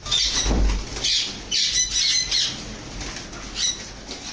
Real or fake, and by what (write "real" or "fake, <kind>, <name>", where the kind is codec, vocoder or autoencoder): real